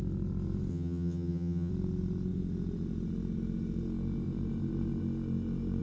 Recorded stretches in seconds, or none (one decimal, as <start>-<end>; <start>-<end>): 0.0-0.7; 1.7-5.8